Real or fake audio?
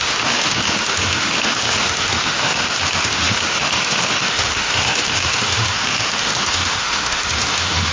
fake